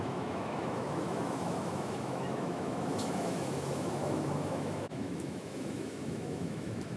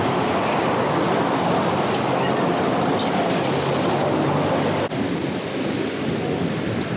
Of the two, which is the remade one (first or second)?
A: first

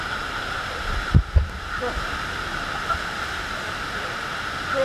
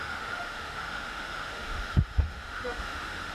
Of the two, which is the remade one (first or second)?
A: second